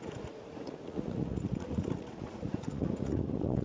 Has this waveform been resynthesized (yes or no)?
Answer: yes